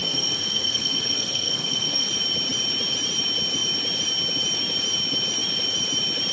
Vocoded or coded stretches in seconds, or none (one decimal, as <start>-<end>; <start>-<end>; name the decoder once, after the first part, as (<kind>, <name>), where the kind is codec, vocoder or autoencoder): 0.0-2.1 (codec, SNAC)

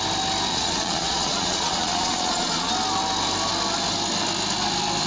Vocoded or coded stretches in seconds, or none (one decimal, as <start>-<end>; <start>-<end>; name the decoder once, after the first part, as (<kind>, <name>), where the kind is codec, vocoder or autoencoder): 0.5-2.7 (vocoder, Vocos)

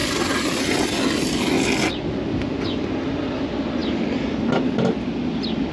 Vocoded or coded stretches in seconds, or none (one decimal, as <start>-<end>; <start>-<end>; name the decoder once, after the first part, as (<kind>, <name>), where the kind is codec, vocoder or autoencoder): none